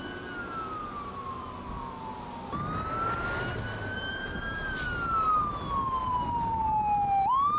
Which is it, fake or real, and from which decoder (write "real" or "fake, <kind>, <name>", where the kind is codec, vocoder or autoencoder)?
real